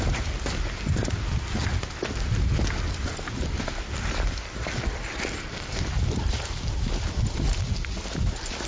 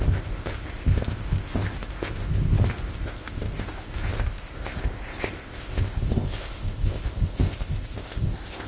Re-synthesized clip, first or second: second